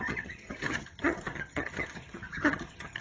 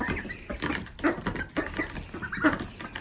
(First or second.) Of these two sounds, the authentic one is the second